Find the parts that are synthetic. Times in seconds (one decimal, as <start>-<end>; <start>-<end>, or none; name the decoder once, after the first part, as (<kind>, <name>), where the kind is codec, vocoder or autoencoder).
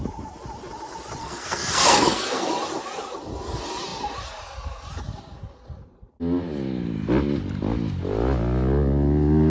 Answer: 1.2-2.5 (codec, SNAC)